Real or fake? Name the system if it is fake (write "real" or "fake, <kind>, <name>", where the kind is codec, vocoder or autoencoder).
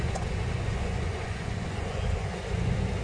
fake, vocoder, Vocos